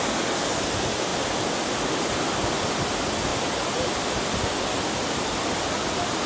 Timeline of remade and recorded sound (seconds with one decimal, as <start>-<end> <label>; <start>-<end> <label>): 0.0-6.3 recorded